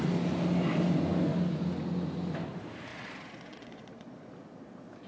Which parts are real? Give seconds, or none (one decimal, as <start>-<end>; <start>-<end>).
0.0-2.9; 4.3-5.1